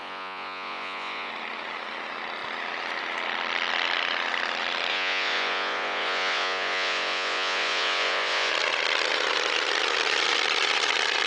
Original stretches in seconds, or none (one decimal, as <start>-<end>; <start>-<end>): 1.3-4.9; 8.5-11.3